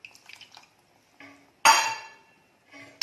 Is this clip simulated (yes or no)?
no